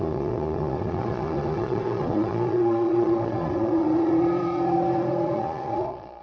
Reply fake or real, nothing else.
fake